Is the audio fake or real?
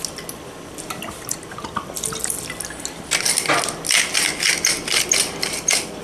real